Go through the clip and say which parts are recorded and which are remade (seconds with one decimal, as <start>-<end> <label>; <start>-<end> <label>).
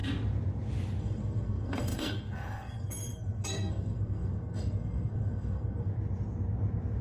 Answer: 0.0-1.0 recorded; 1.0-5.9 remade; 5.9-7.0 recorded